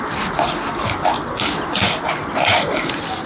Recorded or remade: recorded